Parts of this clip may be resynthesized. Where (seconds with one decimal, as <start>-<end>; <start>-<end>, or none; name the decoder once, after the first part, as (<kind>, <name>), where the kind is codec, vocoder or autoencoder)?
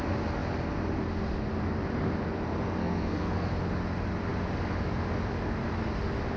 2.8-3.5 (codec, SNAC)